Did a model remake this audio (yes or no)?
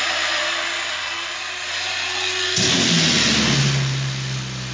no